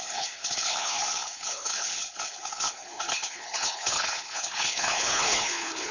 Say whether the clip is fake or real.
fake